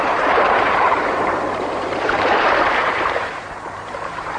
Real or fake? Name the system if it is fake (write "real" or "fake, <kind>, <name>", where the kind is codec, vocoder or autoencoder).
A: fake, vocoder, BigVGAN v2